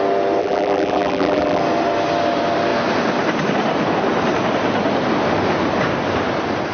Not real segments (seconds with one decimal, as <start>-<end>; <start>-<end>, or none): 0.4-1.6